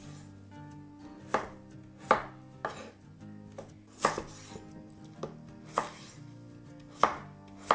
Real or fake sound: real